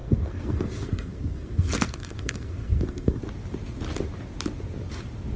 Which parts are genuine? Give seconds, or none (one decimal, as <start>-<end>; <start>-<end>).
3.2-5.4